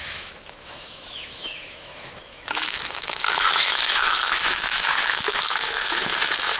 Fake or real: fake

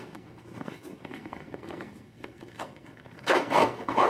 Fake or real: fake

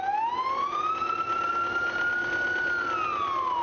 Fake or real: real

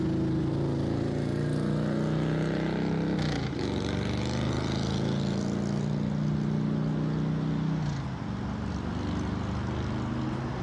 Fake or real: real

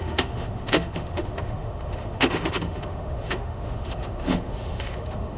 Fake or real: fake